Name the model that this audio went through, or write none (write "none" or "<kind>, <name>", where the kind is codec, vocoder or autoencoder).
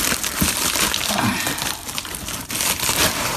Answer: none